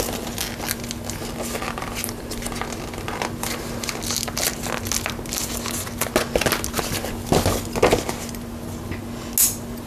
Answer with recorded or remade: recorded